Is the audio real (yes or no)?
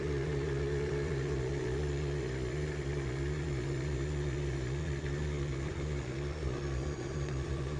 no